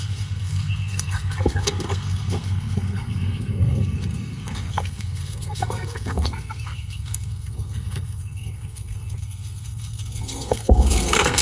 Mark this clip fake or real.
fake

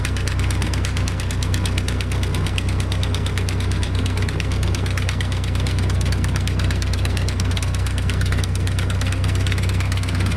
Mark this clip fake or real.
fake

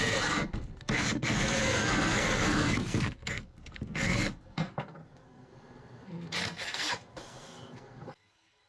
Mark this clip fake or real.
fake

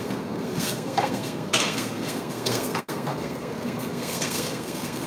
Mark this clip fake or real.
fake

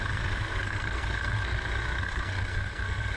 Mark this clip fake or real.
fake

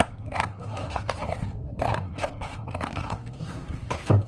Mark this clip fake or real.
fake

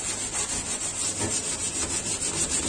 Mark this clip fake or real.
real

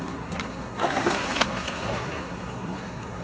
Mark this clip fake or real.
fake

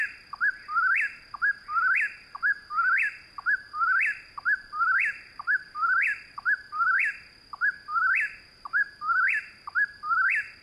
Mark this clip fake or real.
real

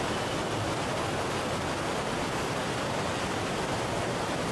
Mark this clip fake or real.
real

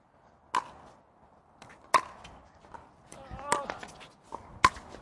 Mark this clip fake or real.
real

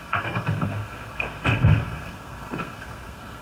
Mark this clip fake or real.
fake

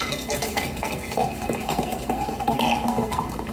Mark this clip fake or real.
fake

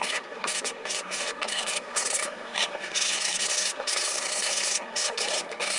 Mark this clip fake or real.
fake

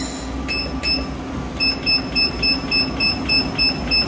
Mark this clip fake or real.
real